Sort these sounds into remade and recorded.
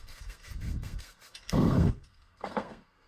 remade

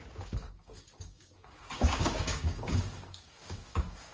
remade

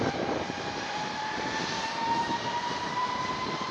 remade